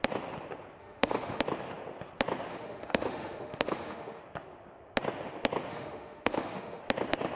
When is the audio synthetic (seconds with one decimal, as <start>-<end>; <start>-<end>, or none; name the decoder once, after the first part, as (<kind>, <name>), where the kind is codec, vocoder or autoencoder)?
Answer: 0.8-1.4 (autoencoder, DAC-VAE); 2.5-4.2; 5.7-6.8